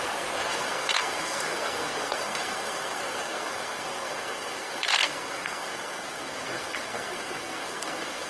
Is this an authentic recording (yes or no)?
no